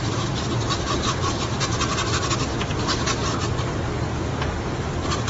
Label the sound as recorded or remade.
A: recorded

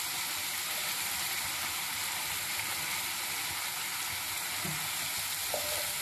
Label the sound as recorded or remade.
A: recorded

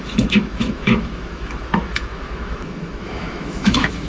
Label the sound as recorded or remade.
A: remade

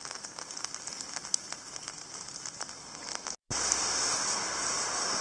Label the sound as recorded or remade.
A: recorded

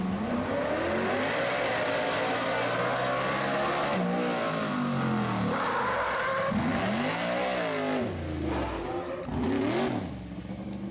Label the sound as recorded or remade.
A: recorded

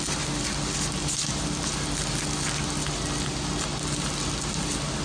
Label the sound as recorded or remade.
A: recorded